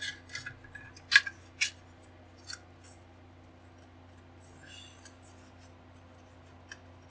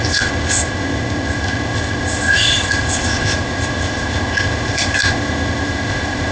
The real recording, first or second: first